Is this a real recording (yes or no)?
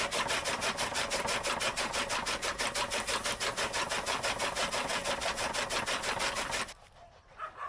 yes